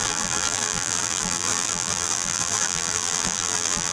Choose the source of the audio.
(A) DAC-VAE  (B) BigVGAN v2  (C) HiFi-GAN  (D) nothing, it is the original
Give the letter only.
B